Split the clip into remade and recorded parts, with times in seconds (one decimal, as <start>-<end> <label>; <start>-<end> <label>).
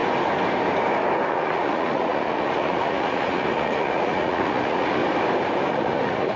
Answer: 0.0-1.3 recorded; 1.3-5.0 remade; 5.0-5.7 recorded; 5.7-6.4 remade